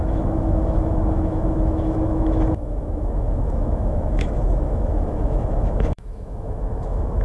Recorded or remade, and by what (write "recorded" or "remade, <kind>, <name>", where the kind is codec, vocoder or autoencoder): remade, autoencoder, DAC-VAE